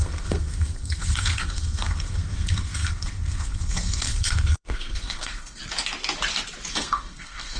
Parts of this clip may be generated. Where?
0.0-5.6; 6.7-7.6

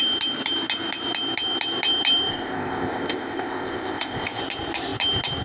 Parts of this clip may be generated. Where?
2.3-4.4

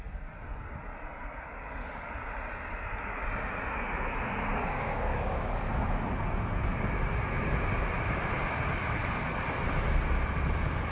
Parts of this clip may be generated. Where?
4.5-5.5

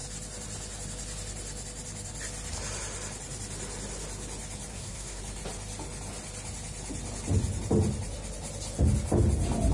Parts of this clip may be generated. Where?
4.7-5.2

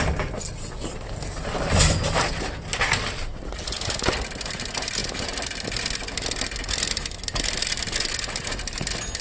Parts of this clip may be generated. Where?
none

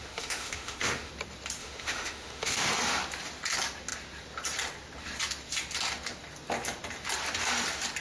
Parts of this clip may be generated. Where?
0.0-1.1; 1.6-2.7

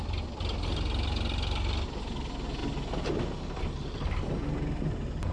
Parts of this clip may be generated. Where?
none